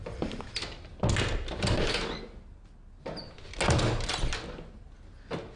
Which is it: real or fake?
real